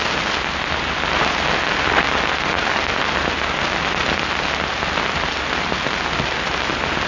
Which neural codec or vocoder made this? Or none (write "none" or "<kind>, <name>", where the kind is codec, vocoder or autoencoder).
none